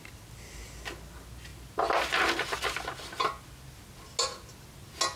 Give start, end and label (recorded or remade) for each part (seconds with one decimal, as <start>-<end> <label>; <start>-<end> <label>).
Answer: 0.0-5.2 recorded